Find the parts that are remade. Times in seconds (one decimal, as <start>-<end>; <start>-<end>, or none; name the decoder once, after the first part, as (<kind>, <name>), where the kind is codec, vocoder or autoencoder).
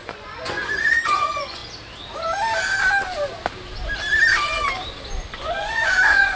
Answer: 0.0-1.6 (vocoder, Vocos); 5.4-6.4